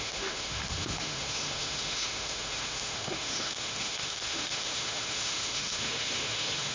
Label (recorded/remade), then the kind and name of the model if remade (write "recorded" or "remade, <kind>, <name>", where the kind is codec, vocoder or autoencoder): remade, autoencoder, DAC-VAE